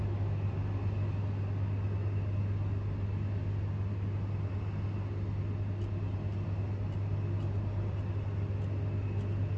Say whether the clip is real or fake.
real